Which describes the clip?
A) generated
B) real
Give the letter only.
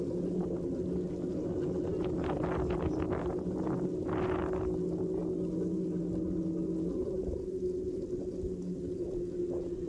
B